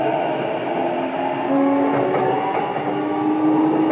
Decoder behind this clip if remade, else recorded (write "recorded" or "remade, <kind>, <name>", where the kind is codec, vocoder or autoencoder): recorded